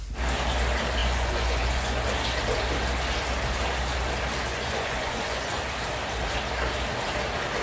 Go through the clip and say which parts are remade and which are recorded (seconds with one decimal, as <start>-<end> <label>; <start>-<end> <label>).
0.0-1.0 recorded; 1.0-2.0 remade; 2.0-4.5 recorded; 4.5-5.6 remade; 5.6-7.6 recorded